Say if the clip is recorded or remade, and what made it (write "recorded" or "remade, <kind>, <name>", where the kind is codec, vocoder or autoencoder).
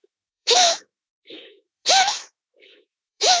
remade, autoencoder, DAC-VAE